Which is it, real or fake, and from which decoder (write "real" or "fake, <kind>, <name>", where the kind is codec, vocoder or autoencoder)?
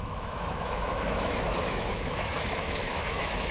fake, autoencoder, DAC-VAE